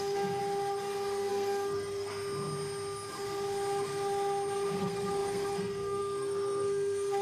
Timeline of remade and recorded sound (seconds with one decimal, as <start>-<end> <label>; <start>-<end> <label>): 0.0-0.4 remade; 0.4-1.3 recorded; 1.3-2.1 remade; 2.1-4.8 recorded; 4.8-7.2 remade